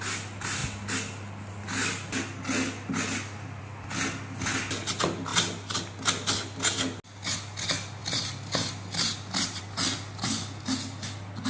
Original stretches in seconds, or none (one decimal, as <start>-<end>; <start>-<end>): 0.0-11.5